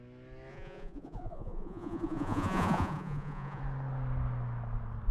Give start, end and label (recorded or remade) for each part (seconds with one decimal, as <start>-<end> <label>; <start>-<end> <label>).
0.0-0.5 recorded; 0.5-3.6 remade; 3.6-5.1 recorded